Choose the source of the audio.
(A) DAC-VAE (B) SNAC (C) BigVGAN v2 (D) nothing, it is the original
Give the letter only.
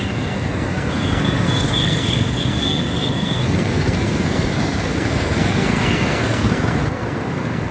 B